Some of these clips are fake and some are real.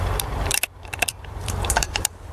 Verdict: fake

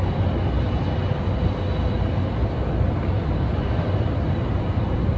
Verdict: real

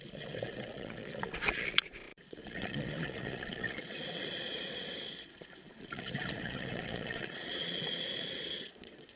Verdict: fake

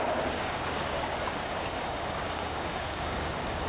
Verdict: fake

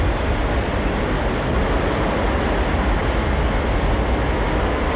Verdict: real